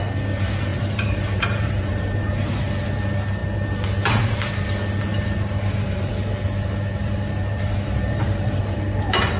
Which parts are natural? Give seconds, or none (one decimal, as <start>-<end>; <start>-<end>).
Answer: 0.0-0.7; 2.6-5.1; 6.1-7.0; 8.6-9.4